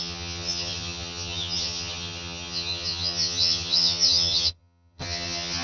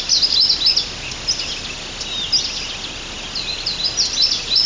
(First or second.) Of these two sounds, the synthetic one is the first